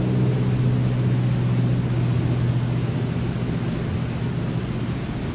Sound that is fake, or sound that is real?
real